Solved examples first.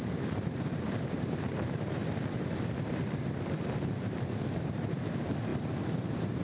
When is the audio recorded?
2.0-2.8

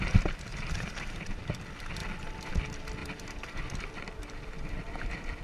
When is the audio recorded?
0.0-0.5; 1.4-3.0; 3.6-5.4

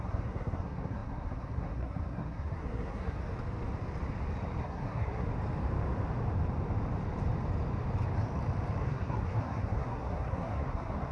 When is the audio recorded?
3.2-4.6; 5.3-8.8